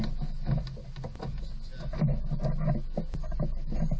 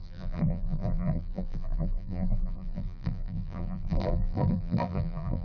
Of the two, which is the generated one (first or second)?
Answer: second